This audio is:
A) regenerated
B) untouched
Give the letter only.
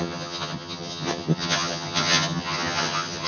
A